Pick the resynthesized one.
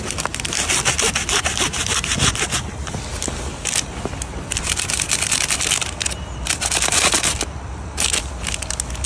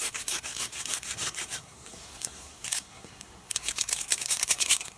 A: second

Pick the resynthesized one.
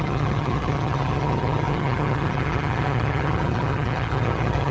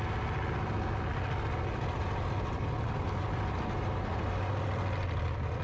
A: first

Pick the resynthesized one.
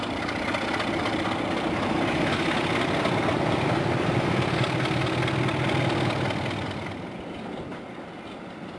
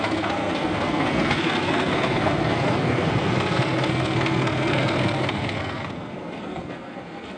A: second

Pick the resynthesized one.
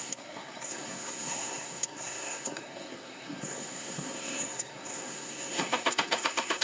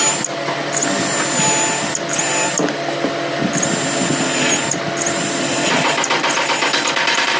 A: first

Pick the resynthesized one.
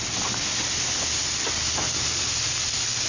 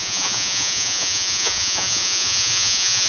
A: second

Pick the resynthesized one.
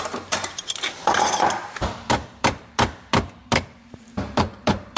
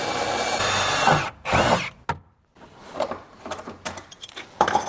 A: first